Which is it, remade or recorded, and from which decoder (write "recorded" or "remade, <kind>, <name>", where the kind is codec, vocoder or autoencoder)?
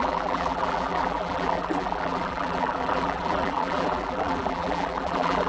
remade, vocoder, BigVGAN v2